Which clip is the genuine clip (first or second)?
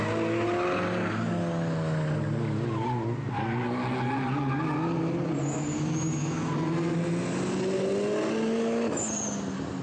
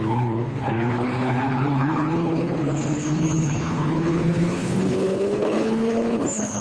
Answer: first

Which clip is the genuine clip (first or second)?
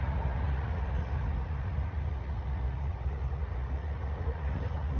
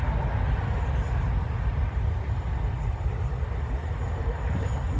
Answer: second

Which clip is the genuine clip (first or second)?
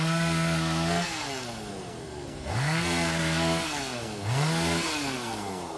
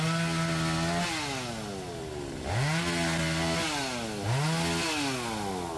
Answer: second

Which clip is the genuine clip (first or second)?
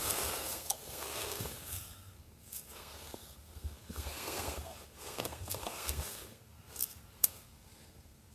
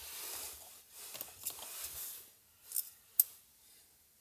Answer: second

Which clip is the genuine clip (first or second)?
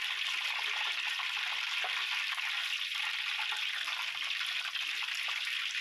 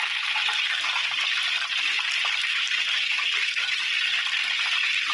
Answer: first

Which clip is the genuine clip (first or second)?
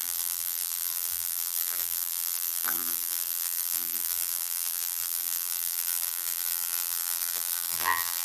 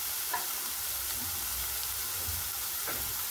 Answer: second